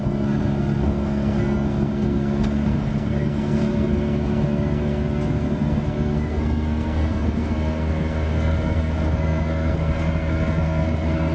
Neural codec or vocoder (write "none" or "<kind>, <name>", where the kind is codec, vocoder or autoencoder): codec, SNAC